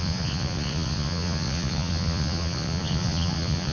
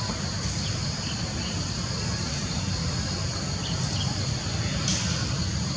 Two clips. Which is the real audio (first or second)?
second